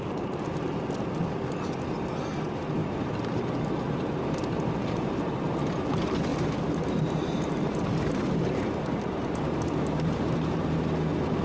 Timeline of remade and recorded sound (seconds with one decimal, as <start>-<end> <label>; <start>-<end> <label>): 0.0-2.8 recorded; 2.8-5.2 remade; 5.2-6.3 recorded; 6.3-10.9 remade; 10.9-11.4 recorded

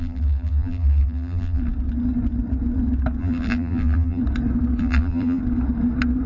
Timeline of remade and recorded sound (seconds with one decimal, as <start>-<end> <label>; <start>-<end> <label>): 0.0-1.6 remade; 1.6-3.2 recorded; 3.2-4.2 remade; 4.2-4.8 recorded; 4.8-5.4 remade; 5.4-6.3 recorded

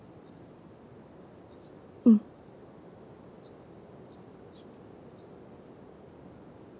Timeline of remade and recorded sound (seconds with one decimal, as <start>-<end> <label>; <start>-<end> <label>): 0.0-2.6 recorded; 2.6-3.2 remade; 3.2-6.8 recorded

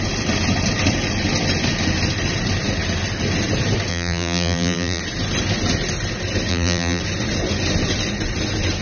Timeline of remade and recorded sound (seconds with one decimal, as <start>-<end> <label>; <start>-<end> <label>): 0.0-3.9 recorded; 3.9-5.0 remade; 5.0-6.5 recorded; 6.5-7.0 remade; 7.0-8.8 recorded